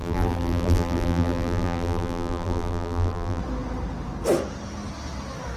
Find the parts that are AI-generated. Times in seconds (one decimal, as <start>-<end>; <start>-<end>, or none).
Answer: 0.0-3.4